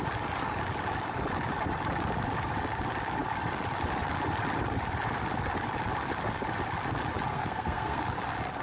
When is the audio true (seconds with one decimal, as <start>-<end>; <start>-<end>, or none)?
0.0-7.3; 8.0-8.6